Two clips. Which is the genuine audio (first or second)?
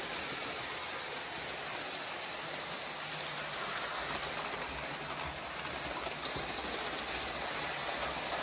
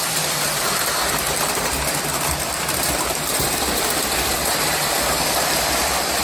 first